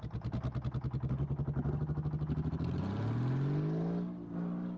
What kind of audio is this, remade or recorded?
recorded